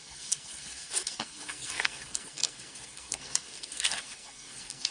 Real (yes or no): no